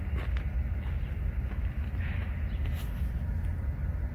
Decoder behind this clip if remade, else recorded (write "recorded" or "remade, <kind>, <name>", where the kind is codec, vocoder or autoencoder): recorded